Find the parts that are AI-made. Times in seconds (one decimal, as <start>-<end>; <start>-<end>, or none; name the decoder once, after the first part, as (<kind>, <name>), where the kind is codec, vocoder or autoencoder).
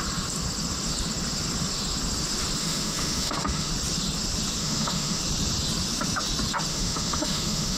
2.6-3.7 (autoencoder, DAC-VAE); 4.6-5.2; 6.7-7.8